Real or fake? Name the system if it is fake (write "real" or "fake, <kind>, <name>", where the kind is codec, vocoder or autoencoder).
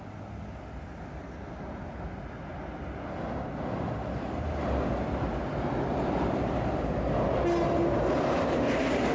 real